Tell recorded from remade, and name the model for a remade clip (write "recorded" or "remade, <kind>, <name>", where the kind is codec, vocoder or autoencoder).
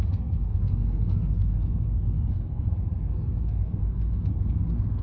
remade, codec, SNAC